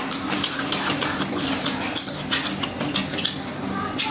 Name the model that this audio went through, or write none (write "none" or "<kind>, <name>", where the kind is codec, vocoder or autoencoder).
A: none